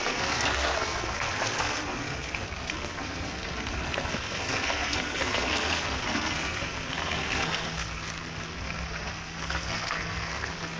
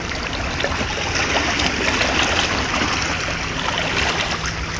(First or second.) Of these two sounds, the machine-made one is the first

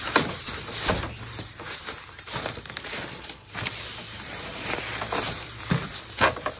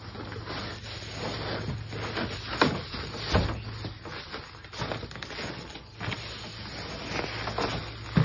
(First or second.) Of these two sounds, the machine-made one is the first